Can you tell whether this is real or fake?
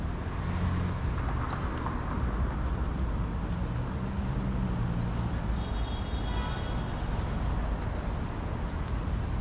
real